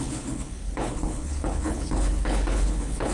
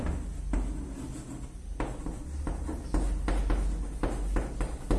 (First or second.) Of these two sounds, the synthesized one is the first